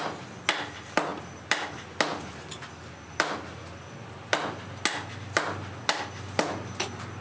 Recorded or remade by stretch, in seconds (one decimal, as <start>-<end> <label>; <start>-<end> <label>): 0.0-7.2 recorded